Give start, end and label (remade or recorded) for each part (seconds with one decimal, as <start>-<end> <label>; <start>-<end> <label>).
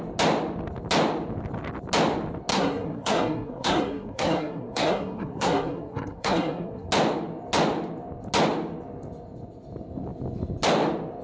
0.0-2.5 recorded; 2.5-6.9 remade; 6.9-11.2 recorded